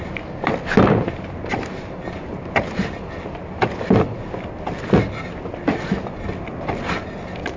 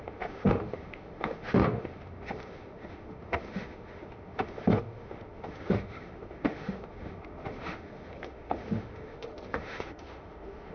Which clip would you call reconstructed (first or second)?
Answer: second